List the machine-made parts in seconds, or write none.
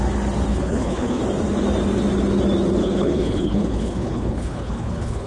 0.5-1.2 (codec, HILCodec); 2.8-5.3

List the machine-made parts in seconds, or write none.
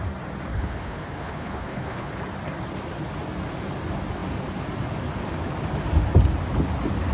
0.5-2.1 (codec, HILCodec)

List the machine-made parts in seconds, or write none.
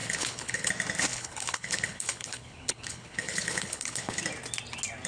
0.0-0.7 (codec, HILCodec); 1.1-4.2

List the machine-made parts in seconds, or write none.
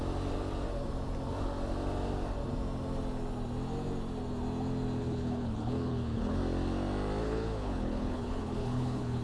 5.0-6.4 (codec, HILCodec); 7.2-9.2